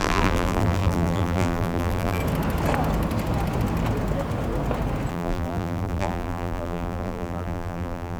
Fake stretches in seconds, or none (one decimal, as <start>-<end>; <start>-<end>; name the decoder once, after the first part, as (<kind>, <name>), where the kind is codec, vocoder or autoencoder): 0.0-2.2 (vocoder, BigVGAN v2); 5.1-8.2

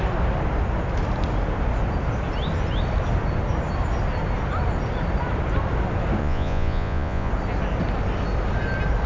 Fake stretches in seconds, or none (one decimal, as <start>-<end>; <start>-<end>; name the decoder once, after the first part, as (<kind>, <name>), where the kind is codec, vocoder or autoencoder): 6.2-7.3 (vocoder, Vocos)